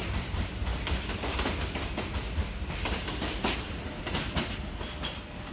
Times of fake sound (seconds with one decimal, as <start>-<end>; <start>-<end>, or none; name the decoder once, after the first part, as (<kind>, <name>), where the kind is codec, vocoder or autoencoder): none